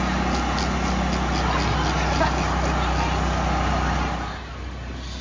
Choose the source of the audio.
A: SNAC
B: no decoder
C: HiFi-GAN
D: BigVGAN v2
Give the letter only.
B